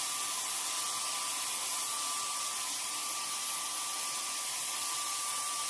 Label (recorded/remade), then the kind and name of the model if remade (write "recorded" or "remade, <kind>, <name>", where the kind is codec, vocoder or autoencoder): recorded